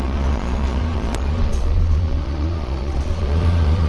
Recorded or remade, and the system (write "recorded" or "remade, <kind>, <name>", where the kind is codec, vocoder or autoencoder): remade, vocoder, Vocos